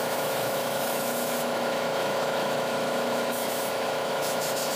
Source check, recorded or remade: remade